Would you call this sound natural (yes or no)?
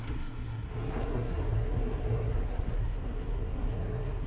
no